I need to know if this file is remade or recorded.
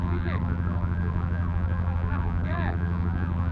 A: remade